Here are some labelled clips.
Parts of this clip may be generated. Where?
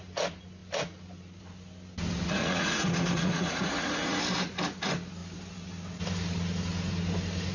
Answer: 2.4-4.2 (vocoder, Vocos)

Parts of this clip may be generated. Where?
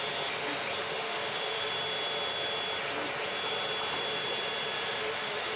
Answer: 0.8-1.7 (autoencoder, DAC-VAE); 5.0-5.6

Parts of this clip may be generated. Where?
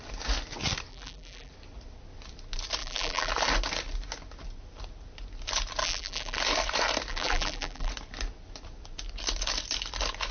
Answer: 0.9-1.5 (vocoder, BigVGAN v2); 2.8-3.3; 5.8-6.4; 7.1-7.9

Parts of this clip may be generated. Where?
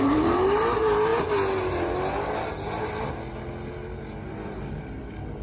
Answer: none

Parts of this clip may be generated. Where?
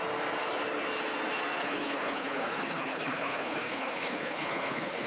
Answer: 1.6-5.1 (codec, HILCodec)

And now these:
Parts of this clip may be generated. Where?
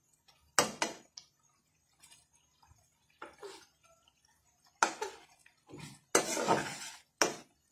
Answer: none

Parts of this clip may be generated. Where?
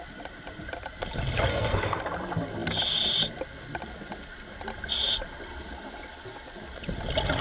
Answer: 1.5-2.0 (codec, SNAC)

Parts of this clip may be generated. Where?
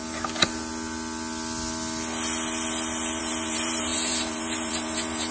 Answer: 3.2-5.3 (vocoder, BigVGAN v2)